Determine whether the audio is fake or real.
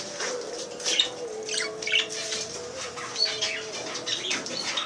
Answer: real